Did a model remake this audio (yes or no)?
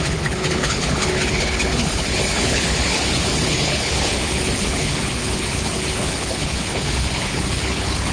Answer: yes